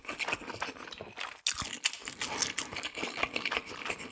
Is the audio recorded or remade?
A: recorded